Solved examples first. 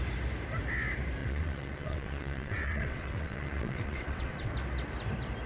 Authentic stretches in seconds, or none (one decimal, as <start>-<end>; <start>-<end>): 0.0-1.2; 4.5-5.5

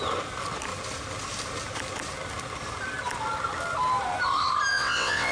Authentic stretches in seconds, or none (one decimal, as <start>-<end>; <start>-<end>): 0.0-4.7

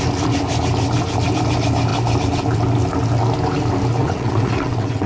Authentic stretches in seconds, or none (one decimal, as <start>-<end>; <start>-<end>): 0.0-4.0

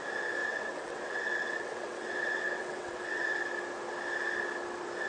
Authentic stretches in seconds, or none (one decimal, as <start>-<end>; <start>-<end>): 0.0-0.4; 3.4-5.1

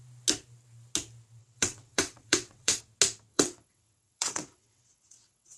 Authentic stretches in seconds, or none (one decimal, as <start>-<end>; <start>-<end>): 0.0-1.4; 2.8-3.3

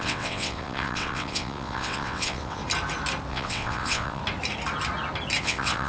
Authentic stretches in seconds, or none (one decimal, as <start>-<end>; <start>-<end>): 2.6-3.3; 4.2-5.4